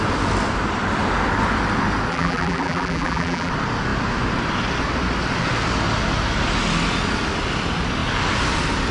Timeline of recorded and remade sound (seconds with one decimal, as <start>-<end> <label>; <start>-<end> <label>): 0.0-2.1 recorded; 2.1-3.5 remade; 3.5-8.9 recorded